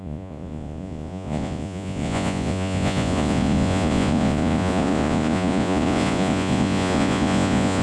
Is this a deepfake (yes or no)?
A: yes